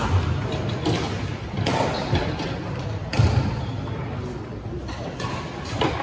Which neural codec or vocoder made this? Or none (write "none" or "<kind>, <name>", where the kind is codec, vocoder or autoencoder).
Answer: none